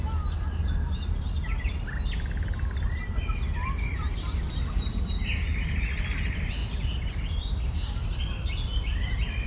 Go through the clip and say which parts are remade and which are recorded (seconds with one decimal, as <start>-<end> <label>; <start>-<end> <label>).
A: 0.0-9.5 recorded